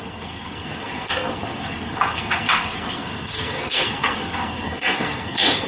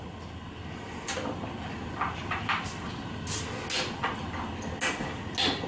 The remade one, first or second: first